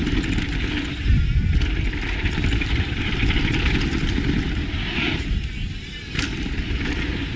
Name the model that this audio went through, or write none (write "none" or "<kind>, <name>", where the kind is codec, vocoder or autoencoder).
none